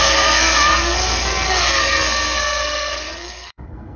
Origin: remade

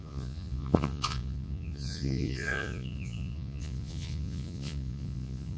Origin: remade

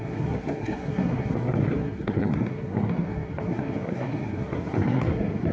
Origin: remade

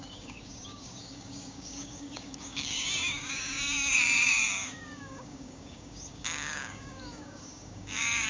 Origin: remade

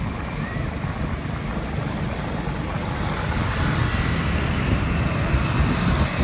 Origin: recorded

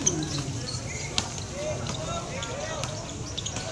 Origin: recorded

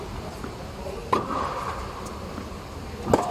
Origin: recorded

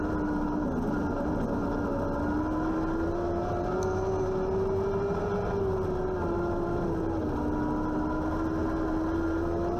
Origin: recorded